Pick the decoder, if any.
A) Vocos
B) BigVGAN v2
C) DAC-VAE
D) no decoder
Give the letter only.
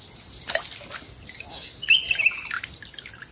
D